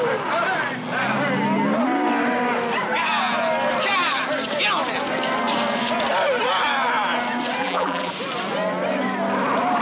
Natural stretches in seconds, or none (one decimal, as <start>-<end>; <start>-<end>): 0.0-7.6; 8.1-9.8